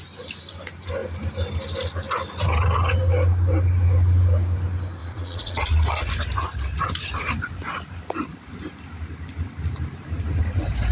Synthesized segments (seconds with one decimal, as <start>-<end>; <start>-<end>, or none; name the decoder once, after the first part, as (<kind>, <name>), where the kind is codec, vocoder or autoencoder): 5.0-5.8 (vocoder, Vocos)